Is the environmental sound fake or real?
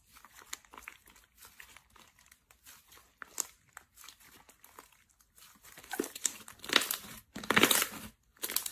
real